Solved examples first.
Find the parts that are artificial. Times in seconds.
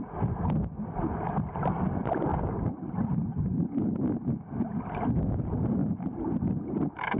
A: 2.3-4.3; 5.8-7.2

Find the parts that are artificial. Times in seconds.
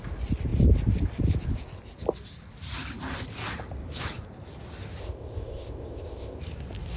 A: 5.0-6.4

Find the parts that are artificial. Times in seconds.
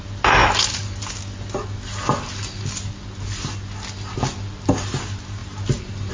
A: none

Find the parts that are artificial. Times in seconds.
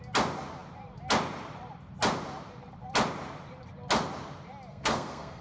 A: 4.7-5.4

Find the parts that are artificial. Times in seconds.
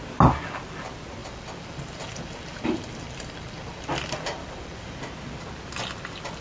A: 1.2-5.0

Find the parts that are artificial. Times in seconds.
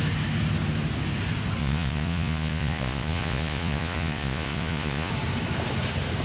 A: 1.6-5.1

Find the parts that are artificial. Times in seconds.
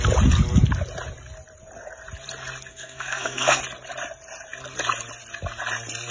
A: 2.7-3.6